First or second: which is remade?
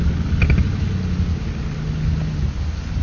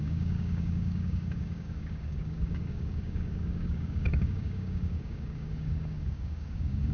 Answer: second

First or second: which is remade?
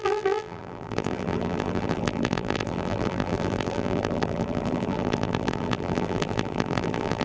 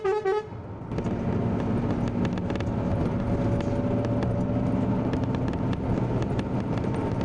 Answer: first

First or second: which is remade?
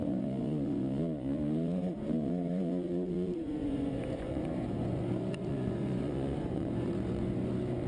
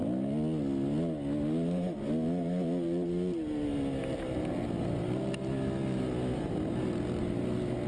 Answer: first